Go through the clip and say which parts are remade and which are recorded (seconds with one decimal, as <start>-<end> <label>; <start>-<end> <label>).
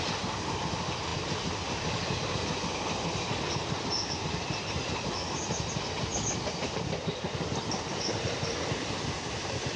0.0-9.8 recorded